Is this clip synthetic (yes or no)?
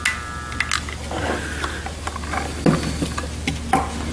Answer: no